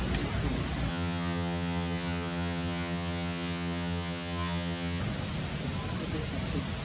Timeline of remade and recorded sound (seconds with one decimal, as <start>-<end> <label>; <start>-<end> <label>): 0.0-0.9 recorded; 0.9-5.0 remade; 5.0-6.8 recorded